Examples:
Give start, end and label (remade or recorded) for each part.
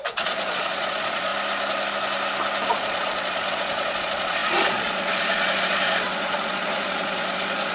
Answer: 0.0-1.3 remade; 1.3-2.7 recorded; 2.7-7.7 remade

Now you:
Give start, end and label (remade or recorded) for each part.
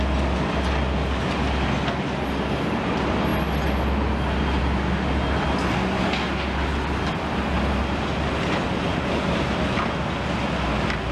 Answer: 0.0-11.1 recorded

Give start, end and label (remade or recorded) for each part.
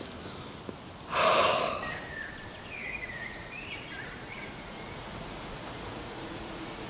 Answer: 0.0-2.8 recorded; 2.8-6.9 remade